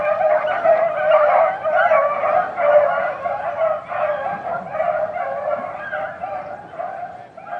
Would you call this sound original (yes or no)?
yes